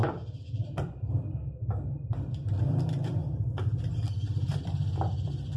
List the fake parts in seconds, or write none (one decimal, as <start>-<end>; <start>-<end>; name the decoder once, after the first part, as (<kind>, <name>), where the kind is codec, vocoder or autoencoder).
0.0-0.7 (vocoder, BigVGAN v2); 1.6-5.0